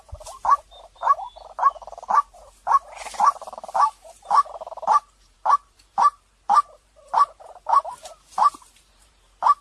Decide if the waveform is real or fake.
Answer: fake